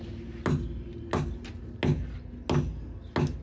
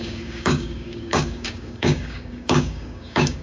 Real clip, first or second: first